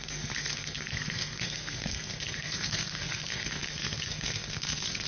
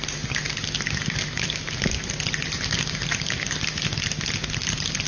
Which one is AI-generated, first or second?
first